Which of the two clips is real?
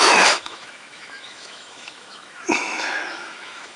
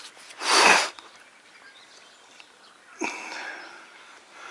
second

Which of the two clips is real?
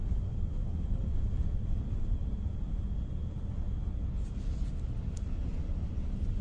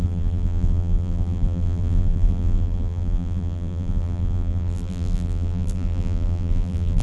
first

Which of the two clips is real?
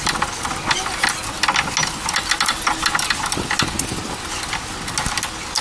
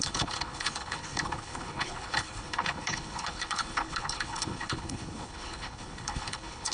first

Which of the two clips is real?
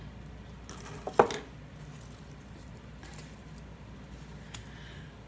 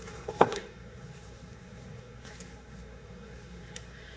first